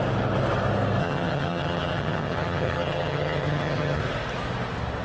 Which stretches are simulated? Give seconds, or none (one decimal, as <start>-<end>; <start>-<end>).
1.0-4.0